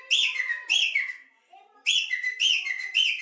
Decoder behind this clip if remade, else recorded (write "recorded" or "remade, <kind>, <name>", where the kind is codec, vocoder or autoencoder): recorded